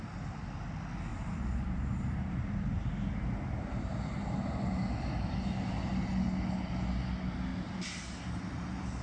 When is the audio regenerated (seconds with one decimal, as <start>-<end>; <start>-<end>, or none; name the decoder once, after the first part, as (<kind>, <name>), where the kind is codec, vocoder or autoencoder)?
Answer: 1.1-4.8 (vocoder, BigVGAN v2); 7.5-8.2